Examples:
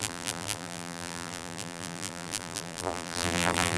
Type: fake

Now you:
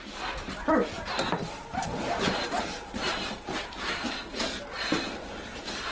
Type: real